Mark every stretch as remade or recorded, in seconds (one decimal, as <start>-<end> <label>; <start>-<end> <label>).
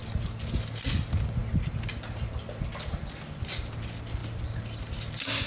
0.0-5.5 recorded